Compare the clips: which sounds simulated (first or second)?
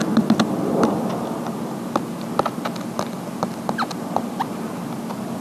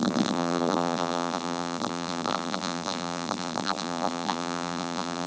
second